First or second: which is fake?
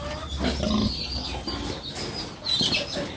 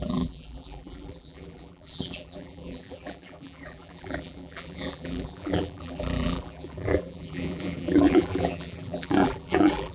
second